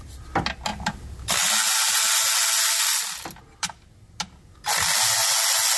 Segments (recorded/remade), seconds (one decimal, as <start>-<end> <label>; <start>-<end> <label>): 0.0-5.8 recorded